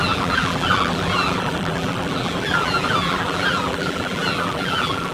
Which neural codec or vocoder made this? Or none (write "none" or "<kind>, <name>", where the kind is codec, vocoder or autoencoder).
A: vocoder, BigVGAN v2